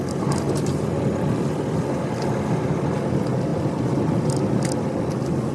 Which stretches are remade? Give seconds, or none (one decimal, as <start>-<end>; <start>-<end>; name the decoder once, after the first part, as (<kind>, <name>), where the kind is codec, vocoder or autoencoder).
none